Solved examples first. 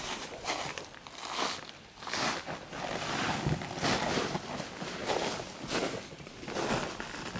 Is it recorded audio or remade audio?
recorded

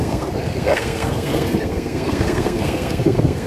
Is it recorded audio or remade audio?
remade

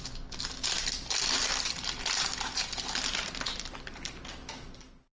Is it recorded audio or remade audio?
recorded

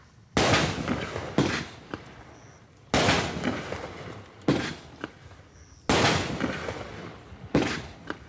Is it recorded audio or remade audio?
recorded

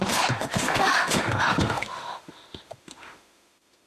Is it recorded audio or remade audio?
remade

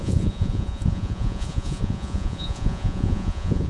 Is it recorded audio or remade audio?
remade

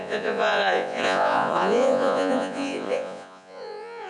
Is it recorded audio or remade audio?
remade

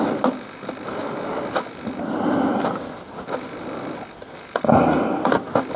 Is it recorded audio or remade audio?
recorded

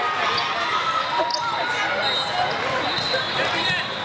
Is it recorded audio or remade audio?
recorded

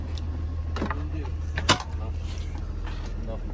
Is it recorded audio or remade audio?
recorded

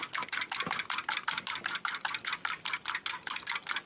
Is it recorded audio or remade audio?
recorded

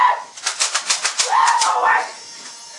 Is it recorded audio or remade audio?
recorded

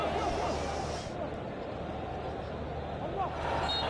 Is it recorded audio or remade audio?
recorded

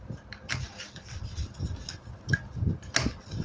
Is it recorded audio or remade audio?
recorded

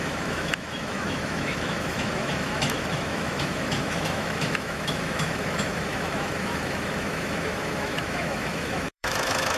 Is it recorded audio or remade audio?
remade